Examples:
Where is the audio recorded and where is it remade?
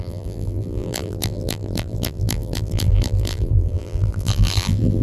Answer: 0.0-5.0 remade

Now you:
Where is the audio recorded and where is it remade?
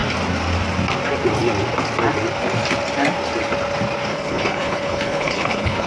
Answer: 0.0-4.1 recorded; 4.1-5.9 remade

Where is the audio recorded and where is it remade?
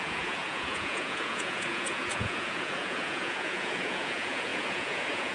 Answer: 0.0-5.3 remade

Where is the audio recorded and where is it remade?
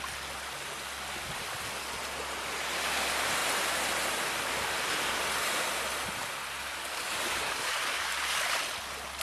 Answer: 0.0-6.7 recorded; 6.7-8.5 remade; 8.5-9.2 recorded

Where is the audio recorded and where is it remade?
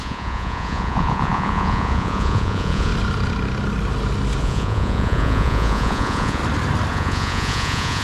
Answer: 0.0-2.9 remade; 2.9-4.4 recorded; 4.4-6.4 remade; 6.4-6.9 recorded; 6.9-8.0 remade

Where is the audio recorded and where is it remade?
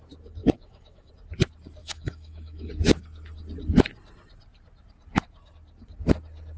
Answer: 0.0-0.4 recorded; 0.4-1.1 remade; 1.1-1.8 recorded; 1.8-2.7 remade; 2.7-6.6 recorded